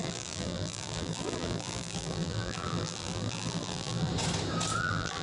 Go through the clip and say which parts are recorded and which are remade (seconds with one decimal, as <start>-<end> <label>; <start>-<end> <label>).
0.0-4.1 remade; 4.1-4.8 recorded; 4.8-5.2 remade